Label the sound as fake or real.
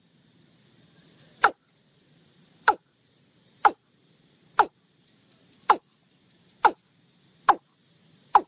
fake